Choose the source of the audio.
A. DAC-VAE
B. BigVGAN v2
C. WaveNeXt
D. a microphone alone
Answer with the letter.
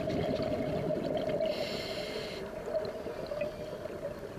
D